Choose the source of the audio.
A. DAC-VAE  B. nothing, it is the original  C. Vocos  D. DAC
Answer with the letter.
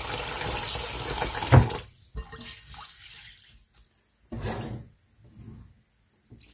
B